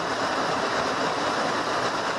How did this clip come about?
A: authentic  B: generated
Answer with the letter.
A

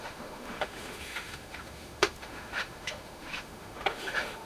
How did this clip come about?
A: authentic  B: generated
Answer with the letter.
B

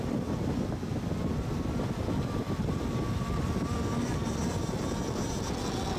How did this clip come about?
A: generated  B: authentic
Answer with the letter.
B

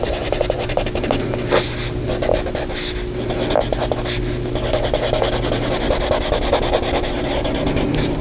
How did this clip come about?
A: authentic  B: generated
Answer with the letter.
A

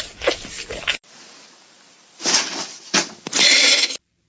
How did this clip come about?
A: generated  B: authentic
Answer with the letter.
B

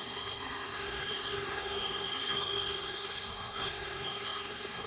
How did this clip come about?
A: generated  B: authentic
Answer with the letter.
A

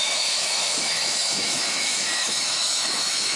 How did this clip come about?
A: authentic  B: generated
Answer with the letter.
B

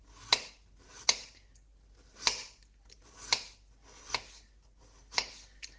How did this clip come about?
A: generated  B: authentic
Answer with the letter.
B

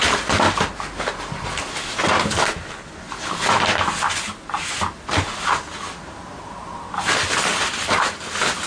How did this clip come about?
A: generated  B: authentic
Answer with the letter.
B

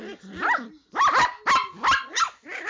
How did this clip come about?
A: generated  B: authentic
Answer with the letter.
B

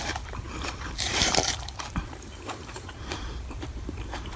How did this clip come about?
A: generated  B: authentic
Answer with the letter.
A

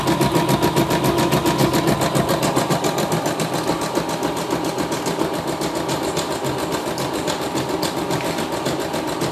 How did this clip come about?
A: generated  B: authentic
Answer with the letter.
B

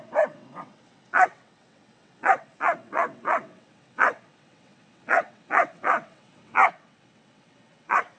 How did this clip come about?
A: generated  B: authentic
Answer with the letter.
A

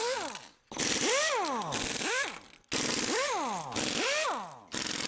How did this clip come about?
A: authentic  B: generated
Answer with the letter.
A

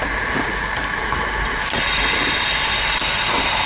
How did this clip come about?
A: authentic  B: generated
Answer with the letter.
A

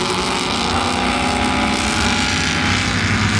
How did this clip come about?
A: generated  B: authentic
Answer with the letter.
B